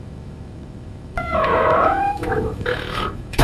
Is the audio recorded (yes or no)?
no